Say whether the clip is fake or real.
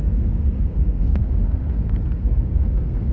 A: fake